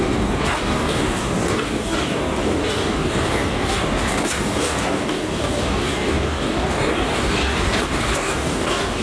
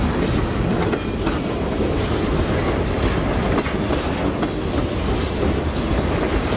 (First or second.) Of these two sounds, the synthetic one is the first